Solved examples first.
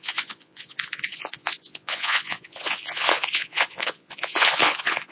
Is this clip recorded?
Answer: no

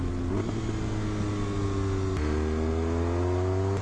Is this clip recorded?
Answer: yes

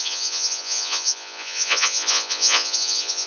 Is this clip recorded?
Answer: no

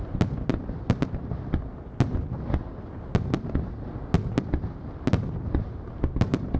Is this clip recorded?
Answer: yes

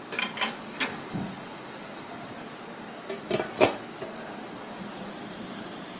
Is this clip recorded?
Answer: no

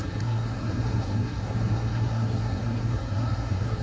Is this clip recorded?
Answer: no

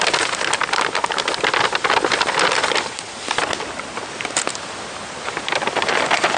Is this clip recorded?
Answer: yes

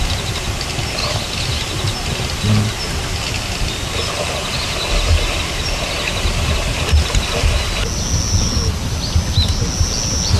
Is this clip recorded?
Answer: yes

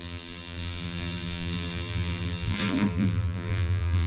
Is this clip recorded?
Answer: no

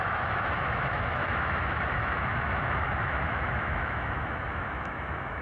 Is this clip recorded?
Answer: no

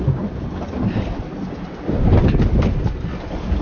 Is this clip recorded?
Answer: yes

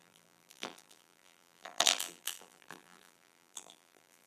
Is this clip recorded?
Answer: no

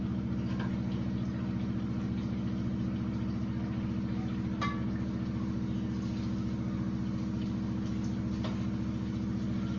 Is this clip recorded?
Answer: yes